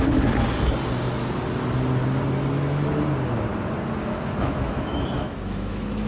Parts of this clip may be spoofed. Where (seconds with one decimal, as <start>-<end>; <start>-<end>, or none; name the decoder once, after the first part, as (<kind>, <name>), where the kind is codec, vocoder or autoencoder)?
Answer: 4.0-6.1 (autoencoder, DAC-VAE)